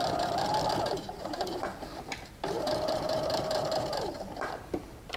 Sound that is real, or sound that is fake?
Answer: fake